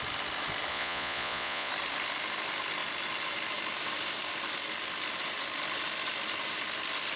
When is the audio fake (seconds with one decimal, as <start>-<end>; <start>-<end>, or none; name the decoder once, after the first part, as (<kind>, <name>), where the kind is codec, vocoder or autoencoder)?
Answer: 0.7-1.7 (vocoder, Vocos)